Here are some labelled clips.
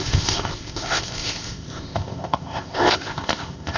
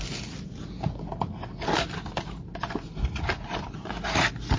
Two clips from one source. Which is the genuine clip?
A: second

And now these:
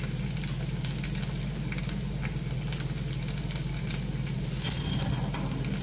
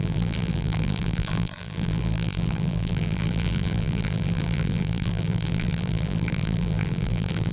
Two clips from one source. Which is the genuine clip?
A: first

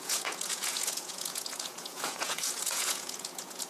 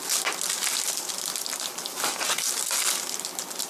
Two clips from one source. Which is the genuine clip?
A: second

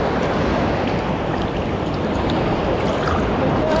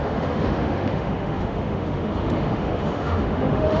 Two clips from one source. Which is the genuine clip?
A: first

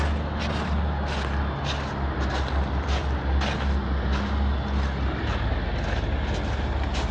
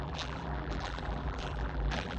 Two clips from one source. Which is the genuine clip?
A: first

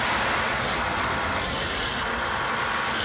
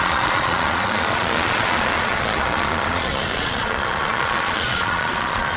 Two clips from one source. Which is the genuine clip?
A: first